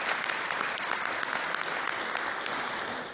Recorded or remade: recorded